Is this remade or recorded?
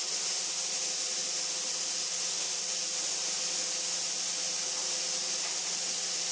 recorded